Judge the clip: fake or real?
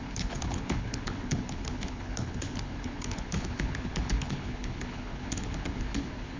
fake